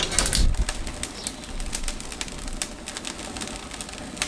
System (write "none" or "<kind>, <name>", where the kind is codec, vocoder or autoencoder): none